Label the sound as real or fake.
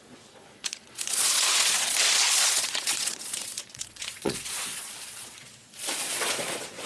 fake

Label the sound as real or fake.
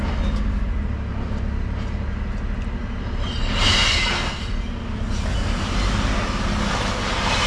real